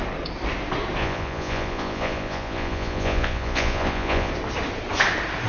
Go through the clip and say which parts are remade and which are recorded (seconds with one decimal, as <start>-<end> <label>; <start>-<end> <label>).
0.0-1.0 recorded; 1.0-4.3 remade; 4.3-5.5 recorded